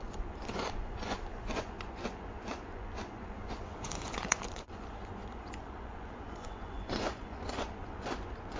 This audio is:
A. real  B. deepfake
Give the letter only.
B